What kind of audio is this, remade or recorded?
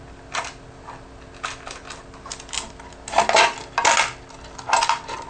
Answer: recorded